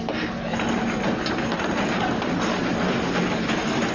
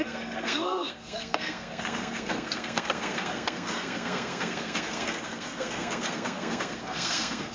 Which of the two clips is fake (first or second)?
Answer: second